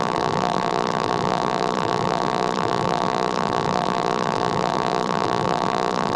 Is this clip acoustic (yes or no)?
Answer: no